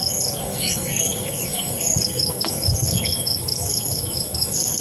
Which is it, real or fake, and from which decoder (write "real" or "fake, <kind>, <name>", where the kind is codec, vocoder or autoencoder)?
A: fake, codec, SNAC